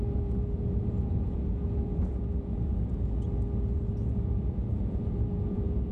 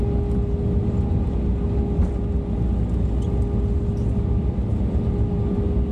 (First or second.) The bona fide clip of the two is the second